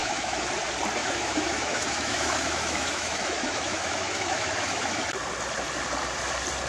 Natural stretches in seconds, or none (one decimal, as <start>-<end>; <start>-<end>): 0.5-1.0; 5.0-6.7